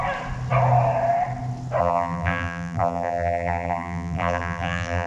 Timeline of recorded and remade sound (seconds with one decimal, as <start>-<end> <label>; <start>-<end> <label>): 0.0-1.8 recorded; 1.8-5.1 remade